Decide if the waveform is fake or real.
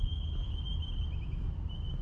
real